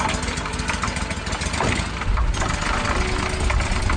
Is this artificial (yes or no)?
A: no